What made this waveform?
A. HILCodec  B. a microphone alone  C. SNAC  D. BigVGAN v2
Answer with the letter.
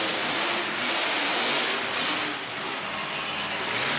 B